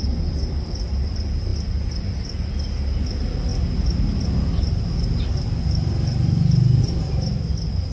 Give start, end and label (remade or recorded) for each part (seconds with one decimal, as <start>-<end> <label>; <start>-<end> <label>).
0.0-7.9 recorded